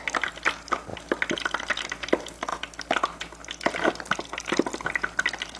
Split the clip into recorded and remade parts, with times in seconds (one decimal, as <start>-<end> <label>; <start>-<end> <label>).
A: 0.0-5.6 recorded